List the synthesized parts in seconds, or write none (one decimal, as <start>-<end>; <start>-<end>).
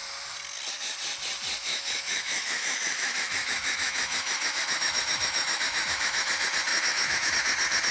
1.6-6.3; 6.7-7.3